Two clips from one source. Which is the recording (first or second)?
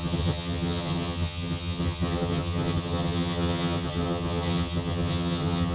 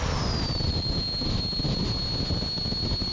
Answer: second